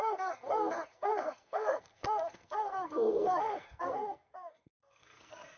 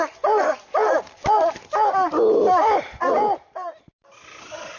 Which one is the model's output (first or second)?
first